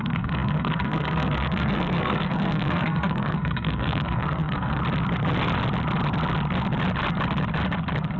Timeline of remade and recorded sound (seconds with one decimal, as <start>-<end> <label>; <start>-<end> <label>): 0.0-4.8 remade; 4.8-8.2 recorded